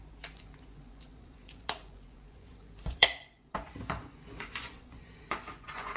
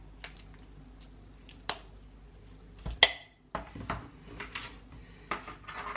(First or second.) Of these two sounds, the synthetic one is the first